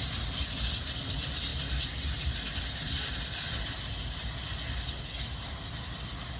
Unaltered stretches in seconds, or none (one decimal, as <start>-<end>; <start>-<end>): 0.0-6.4